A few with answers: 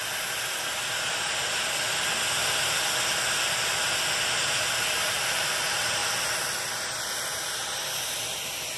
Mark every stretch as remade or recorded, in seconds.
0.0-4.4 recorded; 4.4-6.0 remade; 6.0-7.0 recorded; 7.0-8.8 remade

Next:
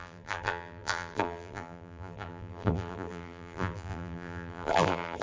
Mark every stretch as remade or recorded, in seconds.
0.0-5.2 remade

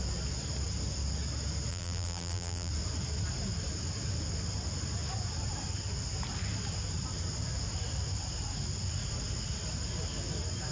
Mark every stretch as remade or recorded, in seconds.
0.0-1.7 recorded; 1.7-2.7 remade; 2.7-10.7 recorded

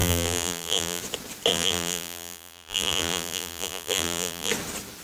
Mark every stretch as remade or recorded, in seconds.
0.0-1.0 remade; 1.0-1.5 recorded; 1.5-4.5 remade; 4.5-5.0 recorded

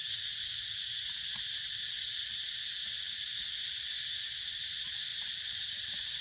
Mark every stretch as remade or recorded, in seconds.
0.0-6.2 remade